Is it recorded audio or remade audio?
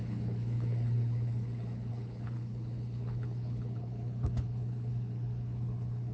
remade